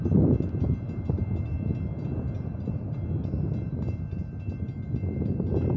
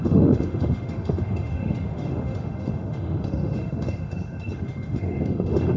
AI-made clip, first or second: second